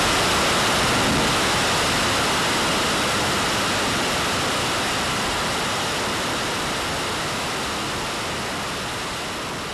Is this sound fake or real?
real